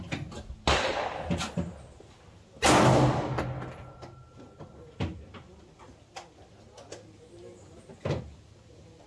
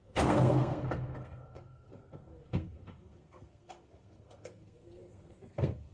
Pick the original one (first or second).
first